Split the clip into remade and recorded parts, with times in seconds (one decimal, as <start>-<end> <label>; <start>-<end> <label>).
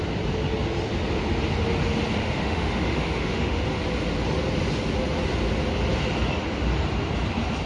0.0-2.2 recorded; 2.2-3.6 remade; 3.6-7.7 recorded